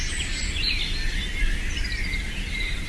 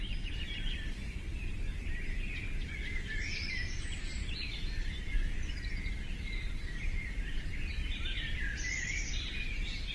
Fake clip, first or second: second